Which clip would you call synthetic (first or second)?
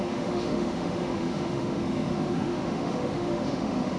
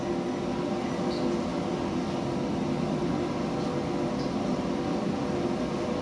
first